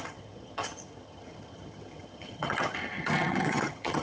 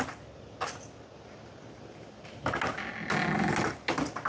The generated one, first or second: first